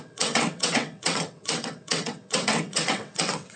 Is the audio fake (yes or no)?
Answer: yes